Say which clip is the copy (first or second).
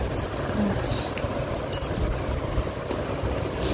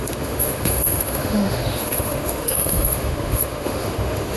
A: second